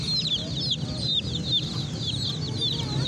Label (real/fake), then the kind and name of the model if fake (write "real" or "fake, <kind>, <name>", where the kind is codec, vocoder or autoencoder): real